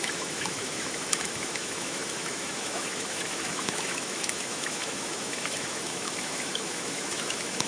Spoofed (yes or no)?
yes